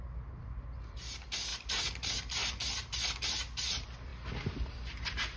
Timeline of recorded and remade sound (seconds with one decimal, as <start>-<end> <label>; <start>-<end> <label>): 0.0-5.4 recorded